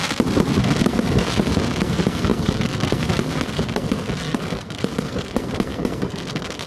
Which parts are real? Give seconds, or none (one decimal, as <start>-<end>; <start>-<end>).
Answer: 0.0-0.6